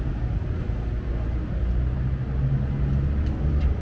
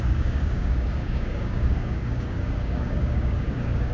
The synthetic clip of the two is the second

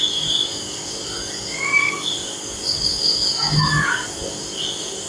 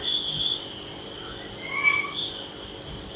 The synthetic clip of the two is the first